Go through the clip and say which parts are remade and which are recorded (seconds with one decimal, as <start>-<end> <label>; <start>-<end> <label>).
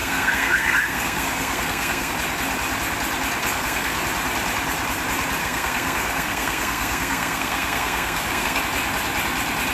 0.0-2.1 remade; 2.1-3.4 recorded; 3.4-4.0 remade; 4.0-5.4 recorded; 5.4-8.6 remade; 8.6-9.7 recorded